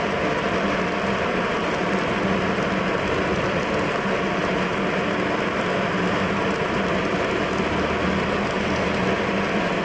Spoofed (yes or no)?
no